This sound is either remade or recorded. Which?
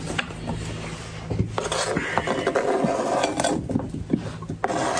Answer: recorded